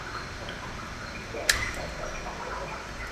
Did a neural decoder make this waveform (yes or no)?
no